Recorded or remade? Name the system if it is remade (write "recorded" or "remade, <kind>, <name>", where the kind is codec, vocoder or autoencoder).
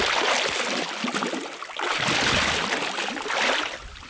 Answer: recorded